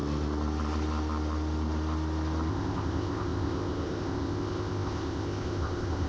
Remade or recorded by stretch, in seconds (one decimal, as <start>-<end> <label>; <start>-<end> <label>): 0.0-2.5 recorded; 2.5-6.1 remade